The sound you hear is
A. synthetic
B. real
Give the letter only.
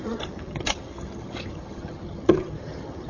A